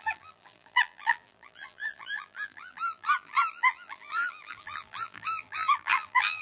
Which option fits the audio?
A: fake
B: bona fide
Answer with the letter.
A